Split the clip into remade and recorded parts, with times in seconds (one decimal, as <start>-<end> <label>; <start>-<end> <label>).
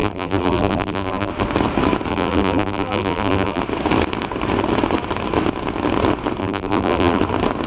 0.0-1.3 remade; 1.3-2.1 recorded; 2.1-3.6 remade; 3.6-6.4 recorded; 6.4-7.2 remade; 7.2-7.7 recorded